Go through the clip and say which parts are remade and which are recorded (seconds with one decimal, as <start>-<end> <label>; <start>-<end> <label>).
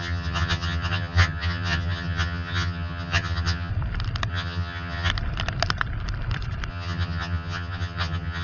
0.0-3.7 remade; 3.7-4.3 recorded; 4.3-5.1 remade; 5.1-6.7 recorded; 6.7-8.4 remade